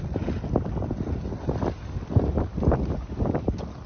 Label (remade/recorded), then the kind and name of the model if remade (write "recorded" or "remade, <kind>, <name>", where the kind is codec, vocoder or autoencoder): recorded